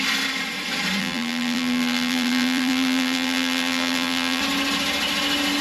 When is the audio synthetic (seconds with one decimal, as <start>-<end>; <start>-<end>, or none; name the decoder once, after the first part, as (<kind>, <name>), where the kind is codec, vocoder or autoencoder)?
1.0-4.4 (vocoder, BigVGAN v2)